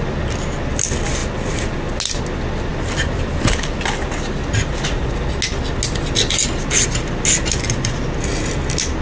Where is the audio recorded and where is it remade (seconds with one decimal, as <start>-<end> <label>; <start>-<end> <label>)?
0.0-2.7 recorded; 2.7-3.5 remade; 3.5-9.0 recorded